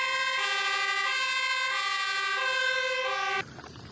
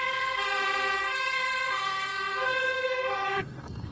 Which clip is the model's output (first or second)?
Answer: second